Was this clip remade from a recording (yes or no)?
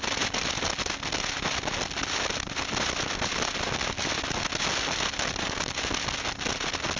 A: no